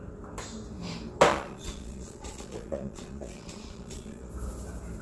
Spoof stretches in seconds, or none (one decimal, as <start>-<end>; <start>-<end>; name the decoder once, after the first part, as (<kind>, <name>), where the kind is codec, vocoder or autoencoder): 1.3-4.3 (vocoder, Vocos)

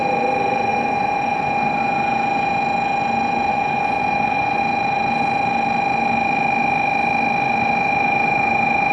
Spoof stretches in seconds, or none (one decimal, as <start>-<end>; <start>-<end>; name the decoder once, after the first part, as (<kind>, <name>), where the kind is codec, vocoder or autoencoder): 0.7-1.8 (vocoder, Vocos); 3.5-4.6

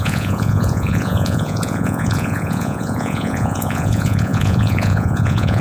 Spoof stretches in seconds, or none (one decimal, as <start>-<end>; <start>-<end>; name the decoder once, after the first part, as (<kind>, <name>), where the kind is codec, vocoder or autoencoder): 0.0-5.6 (vocoder, Vocos)

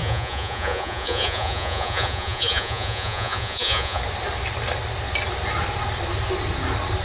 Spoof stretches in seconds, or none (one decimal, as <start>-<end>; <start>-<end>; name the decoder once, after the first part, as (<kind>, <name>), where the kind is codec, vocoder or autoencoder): 0.0-4.0 (vocoder, Vocos)

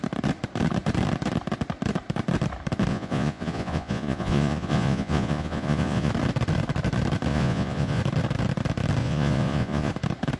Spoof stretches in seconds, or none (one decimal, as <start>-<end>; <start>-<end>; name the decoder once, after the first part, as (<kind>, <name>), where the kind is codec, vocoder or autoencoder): 2.9-6.1 (vocoder, Vocos); 7.3-8.0; 9.0-9.9